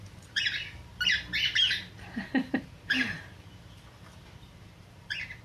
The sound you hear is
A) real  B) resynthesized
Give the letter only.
B